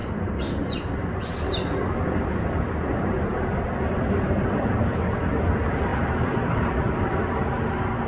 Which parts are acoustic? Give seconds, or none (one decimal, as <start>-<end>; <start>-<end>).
2.3-3.3; 5.3-5.9; 6.8-8.1

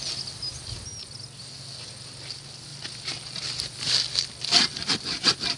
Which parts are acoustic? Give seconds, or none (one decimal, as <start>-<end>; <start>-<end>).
0.0-5.6

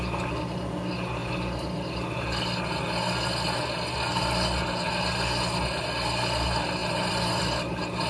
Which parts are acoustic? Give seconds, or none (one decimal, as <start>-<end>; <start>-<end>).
0.0-6.8; 7.4-8.1

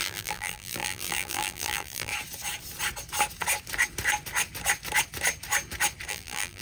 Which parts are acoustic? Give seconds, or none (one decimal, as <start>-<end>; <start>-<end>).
2.1-6.1